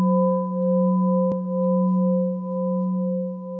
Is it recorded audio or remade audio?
recorded